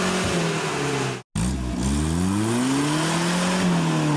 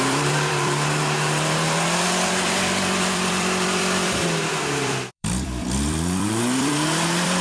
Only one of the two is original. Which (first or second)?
first